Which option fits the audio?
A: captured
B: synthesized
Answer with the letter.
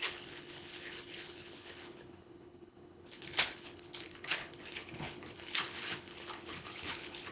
B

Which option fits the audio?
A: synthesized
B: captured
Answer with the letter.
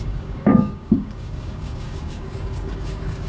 A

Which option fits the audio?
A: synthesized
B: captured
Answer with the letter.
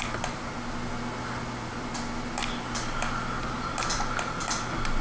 B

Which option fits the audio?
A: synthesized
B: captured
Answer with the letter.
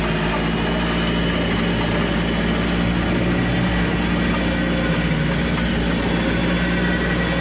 B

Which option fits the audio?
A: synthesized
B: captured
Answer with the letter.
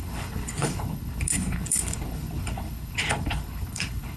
A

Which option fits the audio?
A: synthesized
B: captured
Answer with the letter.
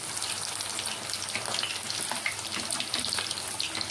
B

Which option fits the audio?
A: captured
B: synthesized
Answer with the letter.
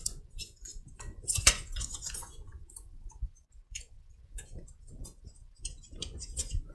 B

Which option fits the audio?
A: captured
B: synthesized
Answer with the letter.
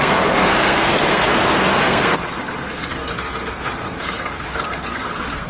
B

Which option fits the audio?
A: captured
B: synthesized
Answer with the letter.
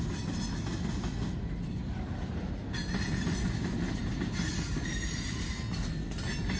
A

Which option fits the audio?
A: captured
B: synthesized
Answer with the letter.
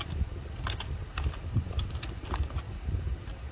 A